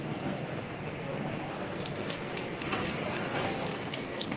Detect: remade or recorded remade